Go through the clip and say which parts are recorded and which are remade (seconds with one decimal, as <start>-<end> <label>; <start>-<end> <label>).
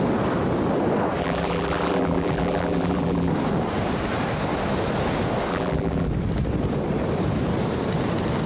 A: 0.0-1.2 recorded; 1.2-3.3 remade; 3.3-5.5 recorded; 5.5-6.1 remade; 6.1-8.5 recorded